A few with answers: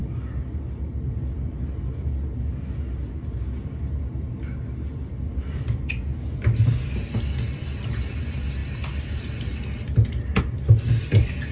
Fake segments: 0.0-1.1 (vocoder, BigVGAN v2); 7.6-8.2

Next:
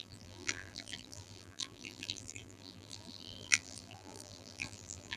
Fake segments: 0.0-5.2 (vocoder, BigVGAN v2)

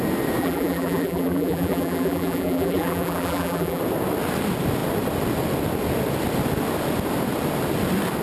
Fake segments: 0.4-3.8 (vocoder, BigVGAN v2)

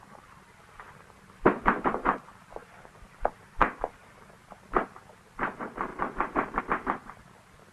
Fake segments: 5.9-6.6 (vocoder, BigVGAN v2)